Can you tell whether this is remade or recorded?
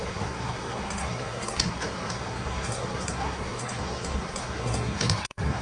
remade